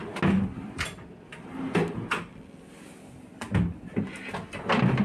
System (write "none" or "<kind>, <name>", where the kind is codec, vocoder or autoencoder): none